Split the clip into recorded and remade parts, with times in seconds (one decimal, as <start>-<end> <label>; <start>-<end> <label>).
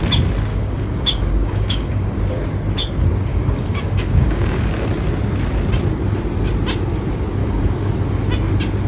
0.0-0.5 recorded; 0.5-2.2 remade; 2.2-3.3 recorded; 3.3-4.7 remade; 4.7-7.4 recorded; 7.4-7.9 remade; 7.9-8.9 recorded